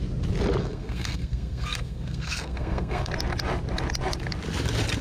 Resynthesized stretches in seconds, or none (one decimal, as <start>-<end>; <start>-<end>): 0.6-3.1